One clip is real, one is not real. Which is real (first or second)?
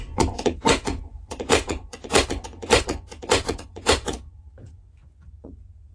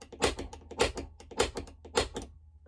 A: second